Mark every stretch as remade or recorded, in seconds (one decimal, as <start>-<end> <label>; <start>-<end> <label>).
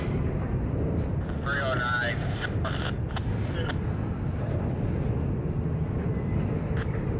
0.0-7.2 recorded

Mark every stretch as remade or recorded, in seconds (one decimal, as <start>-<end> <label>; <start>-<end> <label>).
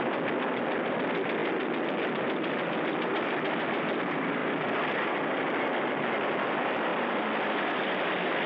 0.0-1.4 remade; 1.4-2.1 recorded; 2.1-4.4 remade; 4.4-5.1 recorded; 5.1-8.5 remade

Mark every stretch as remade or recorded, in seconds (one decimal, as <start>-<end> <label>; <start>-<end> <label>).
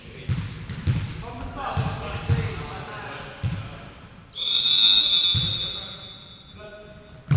0.0-7.4 recorded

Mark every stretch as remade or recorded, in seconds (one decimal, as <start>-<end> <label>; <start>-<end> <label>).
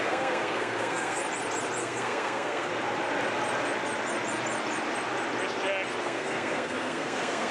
0.0-1.2 remade; 1.2-1.8 recorded; 1.8-2.7 remade; 2.7-6.0 recorded; 6.0-7.5 remade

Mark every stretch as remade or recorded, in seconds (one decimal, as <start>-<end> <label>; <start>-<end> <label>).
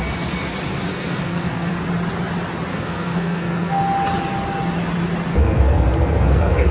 0.0-0.9 recorded; 0.9-1.7 remade; 1.7-2.7 recorded; 2.7-3.8 remade; 3.8-5.3 recorded; 5.3-6.7 remade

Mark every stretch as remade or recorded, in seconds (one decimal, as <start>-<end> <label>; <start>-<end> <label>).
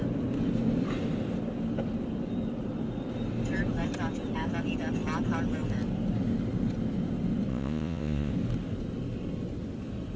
0.0-7.5 recorded; 7.5-8.3 remade; 8.3-10.2 recorded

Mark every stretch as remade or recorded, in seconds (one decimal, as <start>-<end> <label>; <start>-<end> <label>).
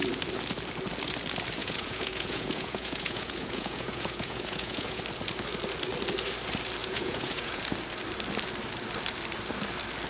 0.0-1.6 recorded; 1.6-5.0 remade; 5.0-6.8 recorded; 6.8-7.6 remade; 7.6-10.1 recorded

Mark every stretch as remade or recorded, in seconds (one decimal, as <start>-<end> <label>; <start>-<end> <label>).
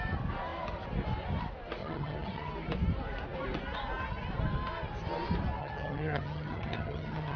0.0-1.8 recorded; 1.8-2.5 remade; 2.5-5.6 recorded; 5.6-7.4 remade